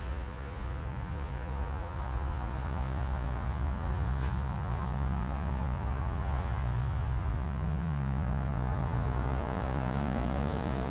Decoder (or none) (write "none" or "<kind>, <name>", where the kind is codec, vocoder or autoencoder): vocoder, Vocos